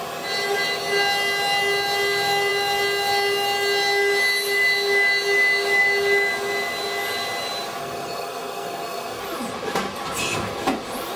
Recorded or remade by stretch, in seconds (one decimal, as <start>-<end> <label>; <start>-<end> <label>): 0.0-7.8 recorded; 7.8-9.2 remade; 9.2-11.2 recorded